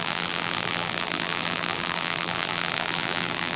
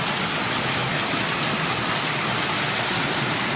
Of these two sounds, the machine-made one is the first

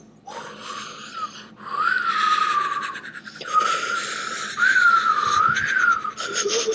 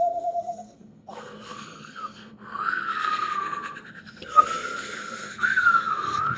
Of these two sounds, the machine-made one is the second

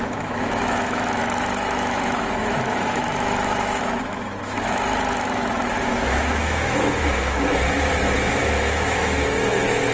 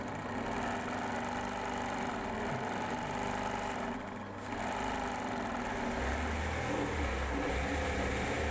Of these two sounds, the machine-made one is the first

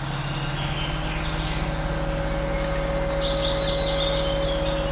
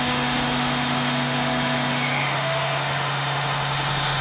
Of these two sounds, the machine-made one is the second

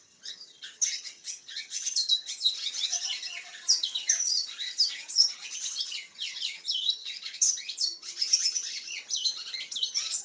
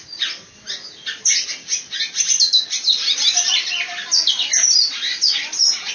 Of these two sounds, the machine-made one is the first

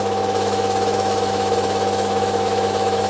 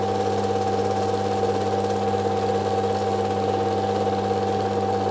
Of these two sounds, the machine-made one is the first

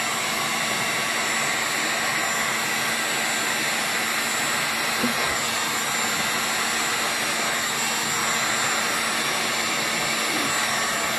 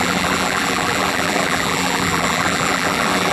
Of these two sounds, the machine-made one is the second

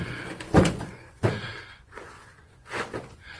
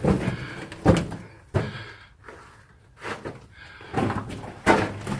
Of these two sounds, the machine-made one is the first